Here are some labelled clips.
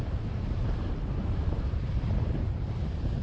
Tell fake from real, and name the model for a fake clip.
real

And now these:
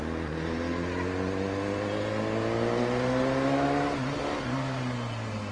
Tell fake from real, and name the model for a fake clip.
real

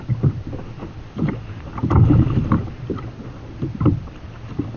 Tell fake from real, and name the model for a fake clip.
real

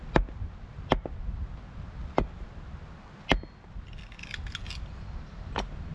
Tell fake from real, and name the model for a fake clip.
real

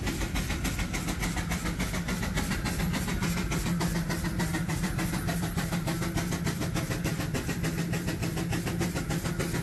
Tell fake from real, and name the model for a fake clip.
real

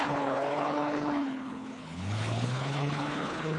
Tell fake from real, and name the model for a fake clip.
fake, codec, HILCodec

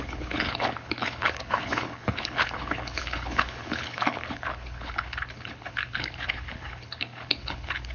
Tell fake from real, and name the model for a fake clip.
fake, codec, HILCodec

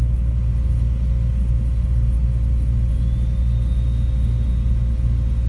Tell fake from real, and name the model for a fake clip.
real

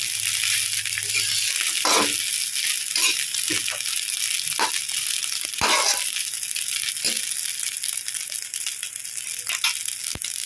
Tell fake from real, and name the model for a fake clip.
real